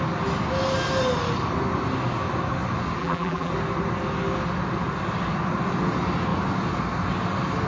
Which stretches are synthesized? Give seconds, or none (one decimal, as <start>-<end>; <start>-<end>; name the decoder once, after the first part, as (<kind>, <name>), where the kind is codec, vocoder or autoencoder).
3.0-3.5 (vocoder, BigVGAN v2)